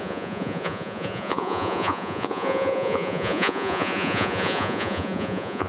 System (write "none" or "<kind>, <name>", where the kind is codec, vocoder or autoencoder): vocoder, Vocos